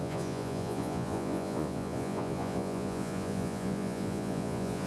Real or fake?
fake